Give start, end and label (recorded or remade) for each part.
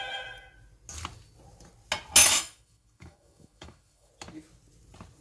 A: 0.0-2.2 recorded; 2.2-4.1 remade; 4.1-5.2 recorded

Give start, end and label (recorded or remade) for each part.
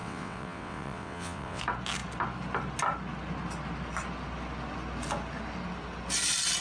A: 0.0-1.6 remade; 1.6-6.6 recorded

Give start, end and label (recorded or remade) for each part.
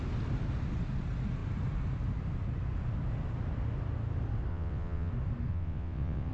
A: 0.0-4.5 recorded; 4.5-5.1 remade; 5.1-5.5 recorded; 5.5-6.3 remade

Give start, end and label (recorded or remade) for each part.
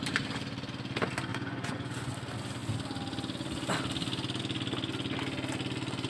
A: 0.0-1.3 recorded; 1.3-2.1 remade; 2.1-6.1 recorded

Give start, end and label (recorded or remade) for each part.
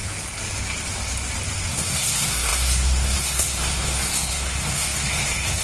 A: 0.0-1.7 recorded; 1.7-5.6 remade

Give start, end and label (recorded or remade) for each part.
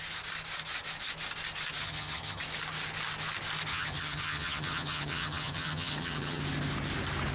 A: 0.0-1.8 recorded; 1.8-2.4 remade; 2.4-3.7 recorded; 3.7-6.4 remade; 6.4-7.3 recorded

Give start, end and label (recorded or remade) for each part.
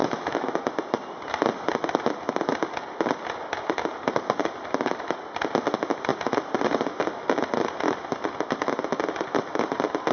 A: 0.0-0.5 remade; 0.5-10.1 recorded